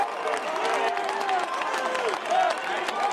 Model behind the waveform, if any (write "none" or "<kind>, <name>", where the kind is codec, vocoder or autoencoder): none